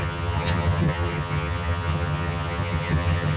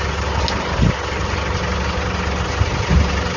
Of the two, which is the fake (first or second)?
first